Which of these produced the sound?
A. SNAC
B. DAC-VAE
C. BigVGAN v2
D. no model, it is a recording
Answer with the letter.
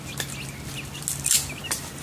D